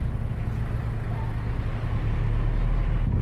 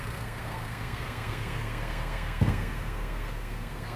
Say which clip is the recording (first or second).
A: first